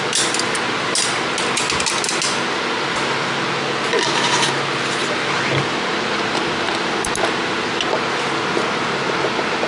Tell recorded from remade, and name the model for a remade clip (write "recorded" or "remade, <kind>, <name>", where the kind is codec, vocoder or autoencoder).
recorded